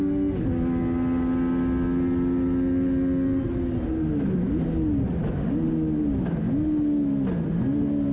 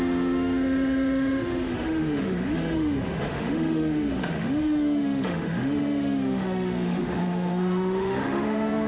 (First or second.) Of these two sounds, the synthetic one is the second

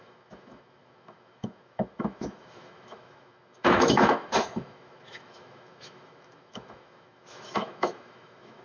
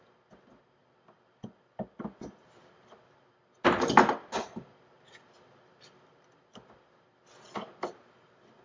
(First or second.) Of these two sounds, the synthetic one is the first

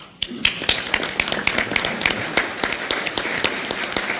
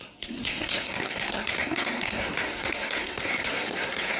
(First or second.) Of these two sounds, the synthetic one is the second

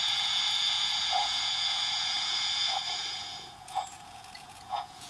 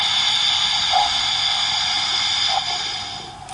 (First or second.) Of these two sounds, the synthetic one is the first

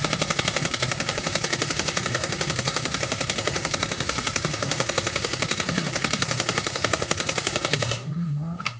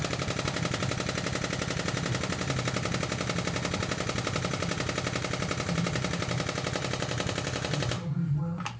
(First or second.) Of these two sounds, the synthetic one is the first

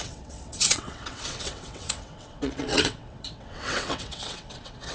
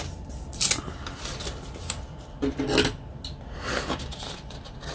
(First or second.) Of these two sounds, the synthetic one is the first